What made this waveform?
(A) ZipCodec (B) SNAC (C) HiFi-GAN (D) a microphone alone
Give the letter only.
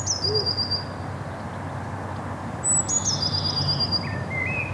D